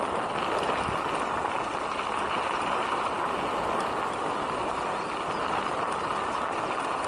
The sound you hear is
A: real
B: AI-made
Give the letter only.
A